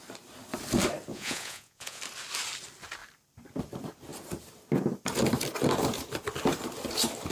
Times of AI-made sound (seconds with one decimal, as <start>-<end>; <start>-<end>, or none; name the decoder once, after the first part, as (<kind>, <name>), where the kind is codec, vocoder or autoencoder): 1.1-2.0 (vocoder, Vocos)